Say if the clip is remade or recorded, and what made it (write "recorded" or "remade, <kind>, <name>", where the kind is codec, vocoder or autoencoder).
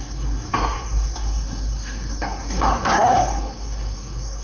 remade, codec, SNAC